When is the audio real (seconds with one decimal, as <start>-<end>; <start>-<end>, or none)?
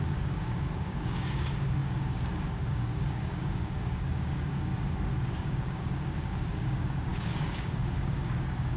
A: 4.7-5.4